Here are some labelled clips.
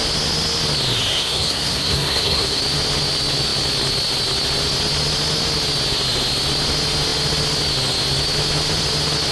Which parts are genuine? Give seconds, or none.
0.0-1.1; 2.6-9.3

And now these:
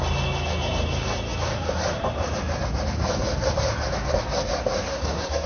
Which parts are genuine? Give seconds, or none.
0.0-4.9

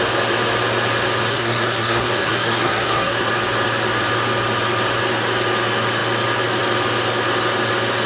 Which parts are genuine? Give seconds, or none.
0.0-1.3; 3.3-8.1

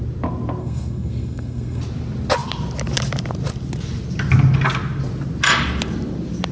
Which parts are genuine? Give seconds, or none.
0.0-0.6; 1.8-6.5

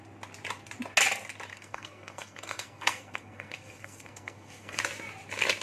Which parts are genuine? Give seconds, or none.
0.0-1.5; 4.8-5.6